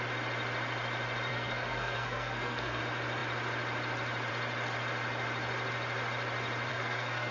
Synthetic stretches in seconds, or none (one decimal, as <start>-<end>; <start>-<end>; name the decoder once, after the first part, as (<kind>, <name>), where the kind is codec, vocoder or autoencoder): 1.3-2.8 (codec, SNAC); 6.7-7.3